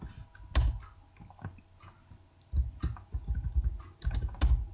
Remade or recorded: recorded